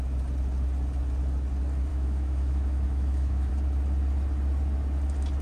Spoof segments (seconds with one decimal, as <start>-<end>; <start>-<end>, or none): 1.9-3.5